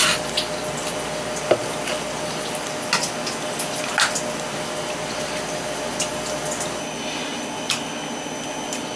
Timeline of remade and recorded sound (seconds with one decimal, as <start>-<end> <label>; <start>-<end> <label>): 0.0-9.0 recorded

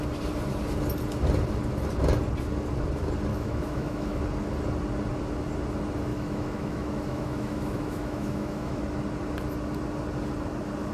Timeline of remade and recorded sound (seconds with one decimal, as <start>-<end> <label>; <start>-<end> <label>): 0.0-3.3 recorded; 3.3-4.2 remade; 4.2-6.1 recorded; 6.1-8.8 remade; 8.8-10.9 recorded

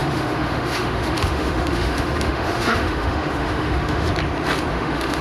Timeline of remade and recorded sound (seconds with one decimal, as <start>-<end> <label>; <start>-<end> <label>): 0.0-4.1 remade; 4.1-4.7 recorded; 4.7-5.2 remade